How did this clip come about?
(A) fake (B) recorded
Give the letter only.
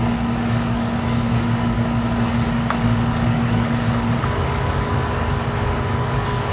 A